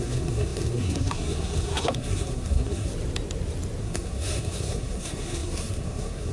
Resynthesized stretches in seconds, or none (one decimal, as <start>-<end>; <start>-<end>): 0.0-2.9; 3.8-6.3